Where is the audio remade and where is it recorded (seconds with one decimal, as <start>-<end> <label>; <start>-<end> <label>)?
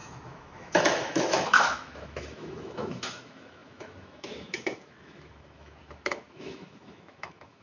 0.0-7.6 remade